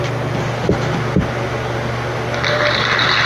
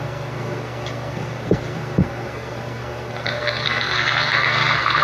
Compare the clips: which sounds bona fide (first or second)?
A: first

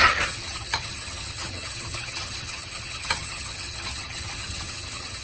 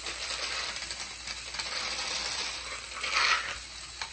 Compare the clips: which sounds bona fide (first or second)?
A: second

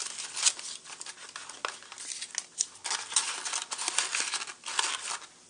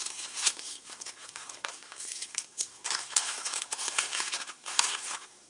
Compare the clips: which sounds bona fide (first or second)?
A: first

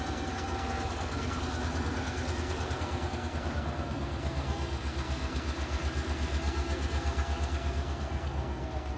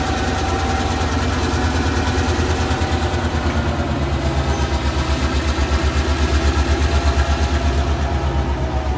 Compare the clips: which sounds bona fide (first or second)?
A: second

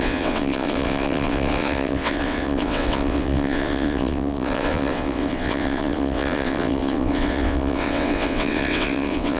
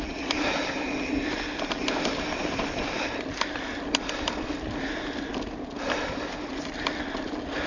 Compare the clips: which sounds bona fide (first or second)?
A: second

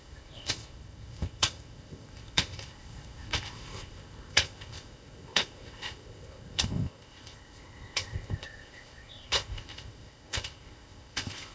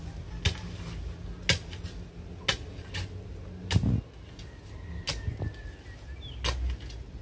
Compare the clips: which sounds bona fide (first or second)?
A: second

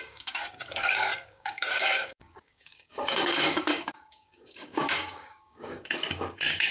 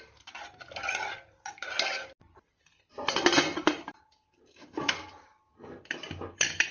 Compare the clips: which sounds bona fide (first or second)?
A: second